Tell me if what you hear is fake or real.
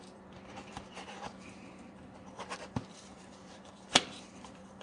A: fake